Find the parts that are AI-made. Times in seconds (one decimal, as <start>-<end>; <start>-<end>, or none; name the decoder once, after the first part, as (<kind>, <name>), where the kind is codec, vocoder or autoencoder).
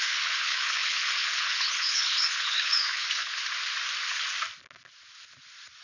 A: 0.0-3.3 (codec, HILCodec)